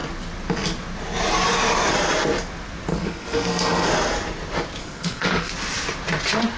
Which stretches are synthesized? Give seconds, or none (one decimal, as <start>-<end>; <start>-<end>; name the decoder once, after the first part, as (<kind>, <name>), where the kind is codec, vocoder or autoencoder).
2.9-3.9 (codec, SNAC); 4.8-5.5